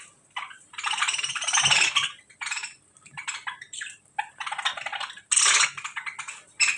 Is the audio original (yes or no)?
yes